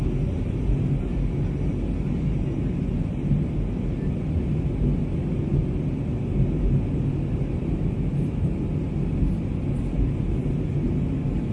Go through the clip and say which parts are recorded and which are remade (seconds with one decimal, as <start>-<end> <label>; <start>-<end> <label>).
0.0-11.5 recorded